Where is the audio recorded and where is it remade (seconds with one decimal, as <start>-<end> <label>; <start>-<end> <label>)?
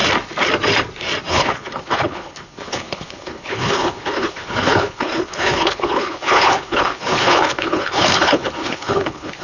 0.0-1.3 recorded; 1.3-9.4 remade